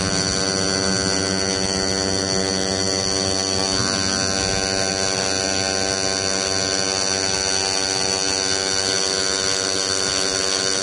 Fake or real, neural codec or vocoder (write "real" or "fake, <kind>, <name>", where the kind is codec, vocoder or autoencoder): real